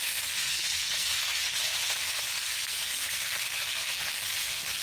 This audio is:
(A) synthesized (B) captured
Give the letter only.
A